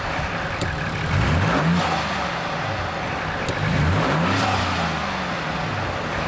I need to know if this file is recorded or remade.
recorded